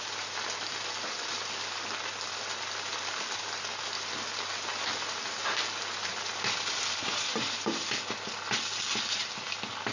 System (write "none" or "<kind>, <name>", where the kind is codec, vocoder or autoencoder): none